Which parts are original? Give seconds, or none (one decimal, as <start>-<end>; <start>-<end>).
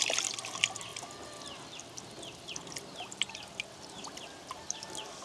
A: 0.0-5.2